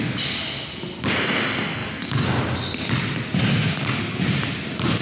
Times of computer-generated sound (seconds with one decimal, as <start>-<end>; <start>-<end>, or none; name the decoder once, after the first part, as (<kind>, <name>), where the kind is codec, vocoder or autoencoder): 1.8-2.3 (vocoder, BigVGAN v2); 3.3-4.0